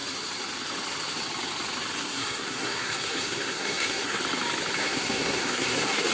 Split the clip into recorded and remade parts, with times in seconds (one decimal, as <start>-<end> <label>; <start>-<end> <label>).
0.0-2.0 recorded; 2.0-4.2 remade; 4.2-4.8 recorded; 4.8-6.1 remade